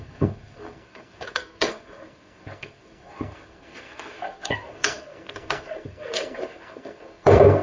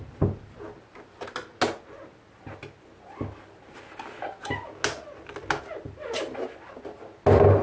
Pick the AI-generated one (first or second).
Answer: first